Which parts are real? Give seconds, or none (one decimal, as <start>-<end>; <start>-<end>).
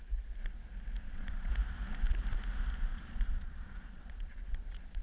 0.0-1.0; 1.5-2.9